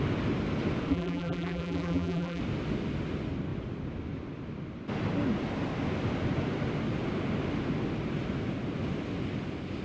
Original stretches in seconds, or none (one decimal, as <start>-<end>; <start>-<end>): 0.0-0.9; 2.4-9.8